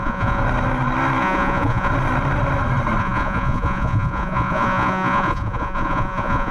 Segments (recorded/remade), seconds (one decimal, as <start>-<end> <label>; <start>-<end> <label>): 0.0-0.4 remade; 0.4-1.2 recorded; 1.2-1.9 remade; 1.9-3.0 recorded; 3.0-6.5 remade